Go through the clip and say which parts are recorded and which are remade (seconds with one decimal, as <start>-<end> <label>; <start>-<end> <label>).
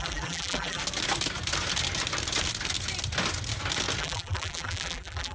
0.0-0.8 remade; 0.8-4.0 recorded; 4.0-5.3 remade